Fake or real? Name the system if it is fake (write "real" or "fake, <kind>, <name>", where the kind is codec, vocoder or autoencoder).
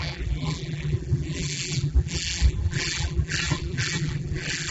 fake, vocoder, BigVGAN v2